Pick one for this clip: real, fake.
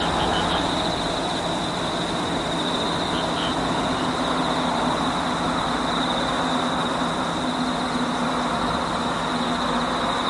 real